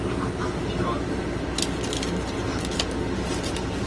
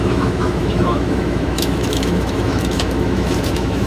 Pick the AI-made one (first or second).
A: second